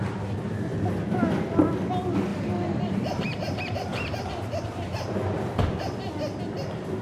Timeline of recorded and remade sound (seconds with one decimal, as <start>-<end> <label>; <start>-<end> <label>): 0.0-2.3 recorded; 2.3-5.6 remade; 5.6-7.0 recorded

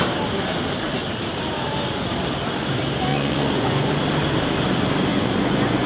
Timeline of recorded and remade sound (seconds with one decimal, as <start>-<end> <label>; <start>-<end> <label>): 0.0-3.1 recorded; 3.1-4.0 remade; 4.0-5.1 recorded; 5.1-5.9 remade

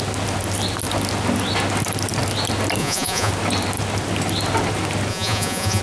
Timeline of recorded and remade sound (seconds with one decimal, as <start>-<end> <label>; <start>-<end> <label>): 0.0-2.8 recorded; 2.8-3.3 remade; 3.3-5.1 recorded; 5.1-5.8 remade

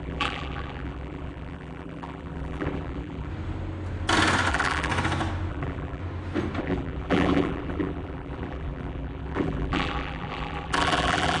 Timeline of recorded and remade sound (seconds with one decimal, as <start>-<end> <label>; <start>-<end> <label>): 0.0-3.3 remade; 3.3-4.5 recorded; 4.5-4.9 remade; 4.9-5.5 recorded; 5.5-6.0 remade; 6.0-6.6 recorded; 6.6-11.4 remade

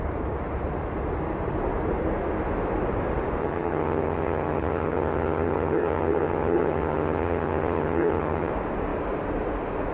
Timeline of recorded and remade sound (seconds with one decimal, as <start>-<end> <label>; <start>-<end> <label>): 0.0-3.4 recorded; 3.4-8.5 remade; 8.5-9.9 recorded